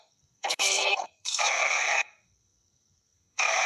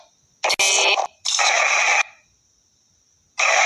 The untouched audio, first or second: second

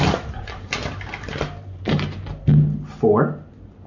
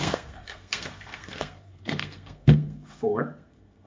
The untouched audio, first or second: first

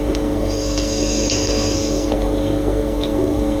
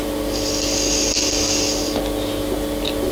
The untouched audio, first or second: second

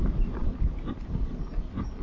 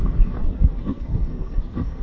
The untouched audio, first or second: first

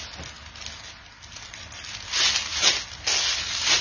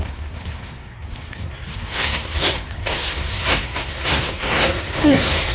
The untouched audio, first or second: first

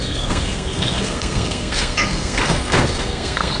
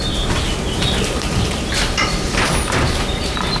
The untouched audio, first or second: second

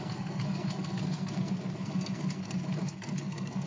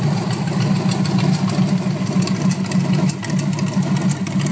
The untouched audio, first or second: second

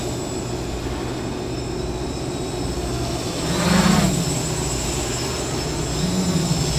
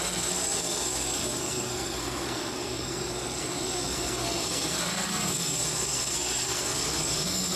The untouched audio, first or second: first